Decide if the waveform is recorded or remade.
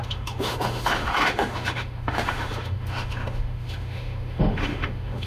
remade